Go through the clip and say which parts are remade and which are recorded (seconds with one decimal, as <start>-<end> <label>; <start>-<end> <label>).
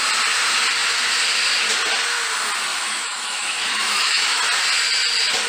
0.0-2.7 recorded; 2.7-4.4 remade; 4.4-5.5 recorded